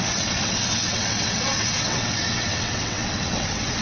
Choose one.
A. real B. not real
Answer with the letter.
B